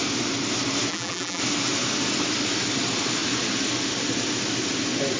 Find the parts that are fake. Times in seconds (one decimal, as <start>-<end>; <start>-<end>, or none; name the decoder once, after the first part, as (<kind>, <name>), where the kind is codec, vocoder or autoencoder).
0.9-1.4 (vocoder, BigVGAN v2)